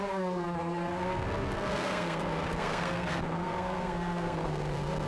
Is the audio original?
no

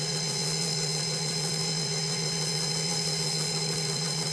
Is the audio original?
no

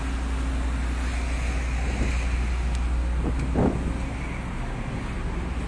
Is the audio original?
yes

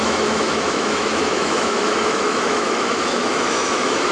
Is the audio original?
no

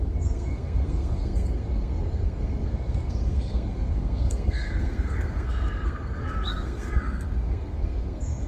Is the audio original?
no